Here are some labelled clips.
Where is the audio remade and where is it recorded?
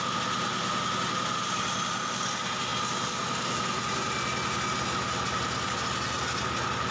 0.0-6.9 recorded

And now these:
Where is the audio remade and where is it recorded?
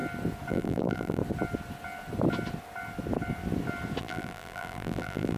0.0-0.5 recorded; 0.5-1.2 remade; 1.2-4.0 recorded; 4.0-5.4 remade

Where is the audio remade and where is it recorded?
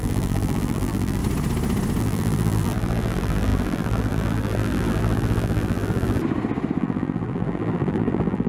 0.0-1.2 remade; 1.2-2.0 recorded; 2.0-6.2 remade; 6.2-6.8 recorded; 6.8-8.5 remade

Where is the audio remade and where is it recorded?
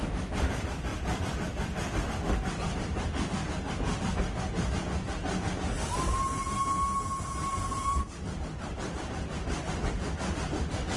0.0-0.9 recorded; 0.9-2.1 remade; 2.1-11.0 recorded